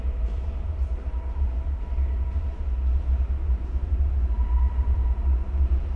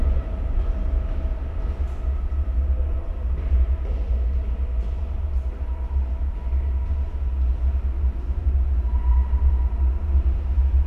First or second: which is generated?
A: first